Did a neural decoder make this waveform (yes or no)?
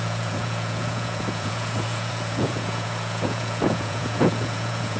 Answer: yes